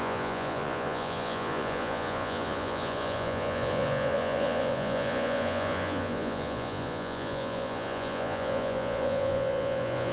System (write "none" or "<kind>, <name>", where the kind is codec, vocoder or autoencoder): vocoder, Vocos